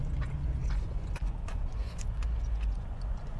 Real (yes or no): no